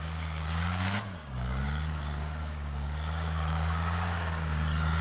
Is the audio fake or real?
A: fake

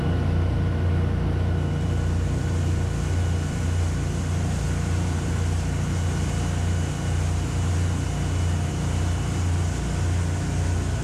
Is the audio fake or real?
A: real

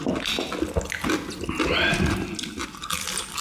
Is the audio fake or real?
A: real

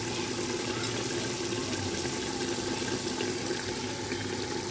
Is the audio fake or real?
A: real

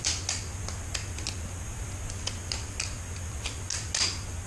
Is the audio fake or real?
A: real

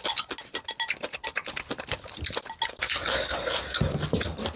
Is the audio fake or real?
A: real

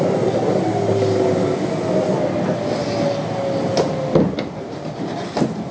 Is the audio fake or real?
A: real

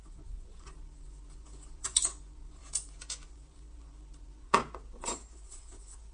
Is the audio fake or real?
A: fake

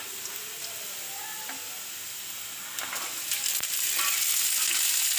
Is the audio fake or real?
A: real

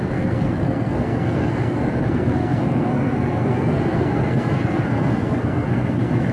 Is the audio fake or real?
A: fake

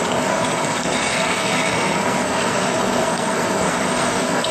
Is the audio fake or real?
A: fake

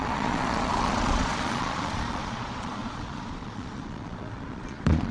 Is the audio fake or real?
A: fake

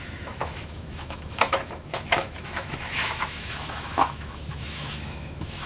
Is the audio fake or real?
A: fake